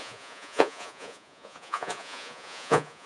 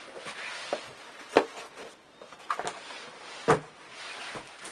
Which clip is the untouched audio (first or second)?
second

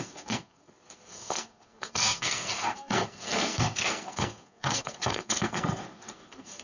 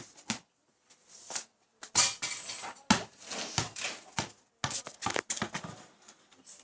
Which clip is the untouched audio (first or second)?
second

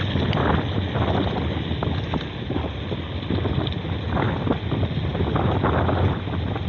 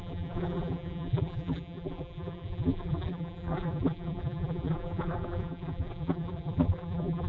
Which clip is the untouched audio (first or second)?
first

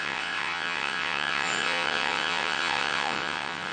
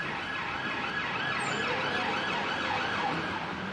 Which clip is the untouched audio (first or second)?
second